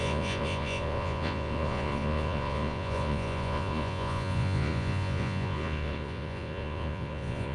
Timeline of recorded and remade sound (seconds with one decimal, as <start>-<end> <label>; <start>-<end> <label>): 0.0-7.5 remade